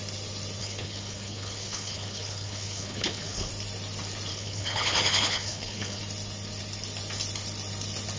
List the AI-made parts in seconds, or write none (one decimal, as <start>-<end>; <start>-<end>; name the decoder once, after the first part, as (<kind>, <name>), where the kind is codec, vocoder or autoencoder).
0.6-3.5 (codec, HILCodec); 4.3-6.0